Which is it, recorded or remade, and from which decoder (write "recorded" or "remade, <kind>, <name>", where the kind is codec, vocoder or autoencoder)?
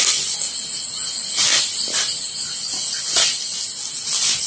recorded